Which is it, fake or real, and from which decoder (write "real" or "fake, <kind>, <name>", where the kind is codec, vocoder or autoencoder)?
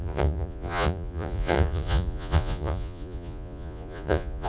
fake, vocoder, Vocos